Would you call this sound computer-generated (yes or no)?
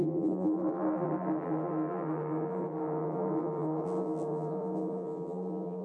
yes